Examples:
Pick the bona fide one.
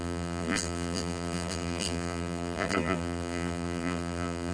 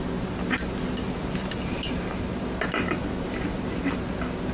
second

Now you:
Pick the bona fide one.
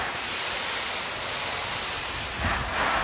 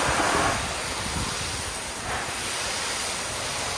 first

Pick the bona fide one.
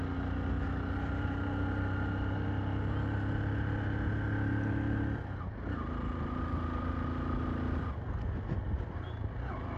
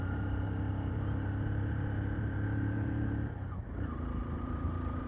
first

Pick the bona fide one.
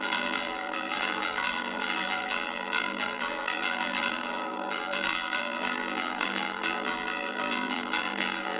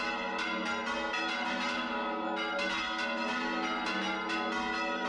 second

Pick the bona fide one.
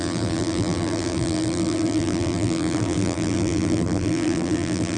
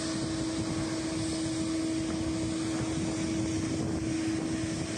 second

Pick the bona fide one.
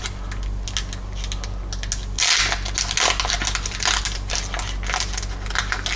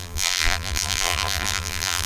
first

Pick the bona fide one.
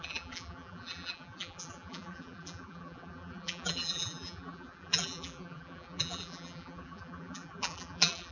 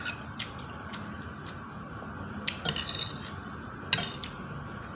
second